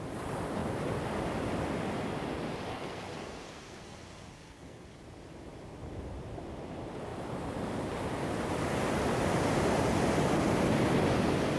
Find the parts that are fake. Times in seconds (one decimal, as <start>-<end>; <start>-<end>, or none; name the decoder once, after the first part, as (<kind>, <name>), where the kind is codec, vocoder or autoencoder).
2.7-5.0 (codec, SNAC)